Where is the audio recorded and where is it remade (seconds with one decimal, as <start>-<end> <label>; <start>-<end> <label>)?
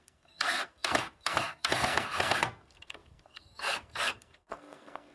0.0-5.1 remade